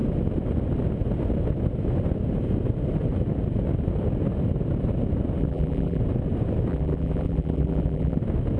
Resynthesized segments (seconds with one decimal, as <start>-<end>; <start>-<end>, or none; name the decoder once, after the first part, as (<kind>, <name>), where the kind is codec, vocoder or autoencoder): 5.4-6.0 (vocoder, BigVGAN v2); 6.7-8.2